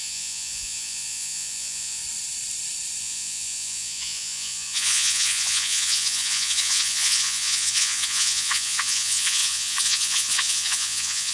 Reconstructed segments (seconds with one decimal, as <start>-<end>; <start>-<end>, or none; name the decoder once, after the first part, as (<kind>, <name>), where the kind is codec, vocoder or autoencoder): 0.0-2.0 (vocoder, Vocos); 3.0-11.3